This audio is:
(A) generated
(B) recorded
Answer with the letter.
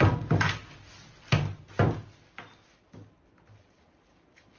B